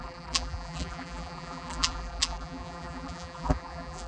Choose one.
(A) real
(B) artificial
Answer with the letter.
B